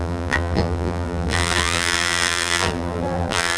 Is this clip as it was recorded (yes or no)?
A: no